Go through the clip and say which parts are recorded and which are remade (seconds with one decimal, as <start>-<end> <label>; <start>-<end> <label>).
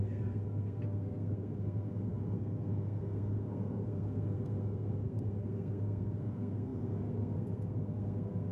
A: 0.0-8.5 remade